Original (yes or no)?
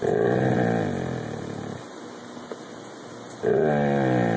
yes